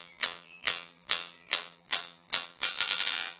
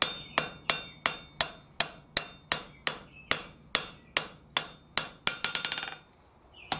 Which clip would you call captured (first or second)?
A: second